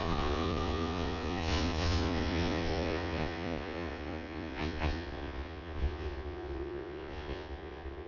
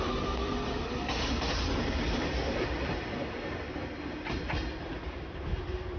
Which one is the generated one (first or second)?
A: first